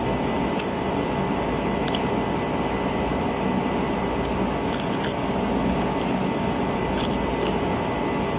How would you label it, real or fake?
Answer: real